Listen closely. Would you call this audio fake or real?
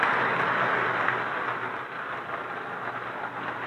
real